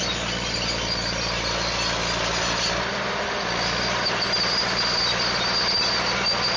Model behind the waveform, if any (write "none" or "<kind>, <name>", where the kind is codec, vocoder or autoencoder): none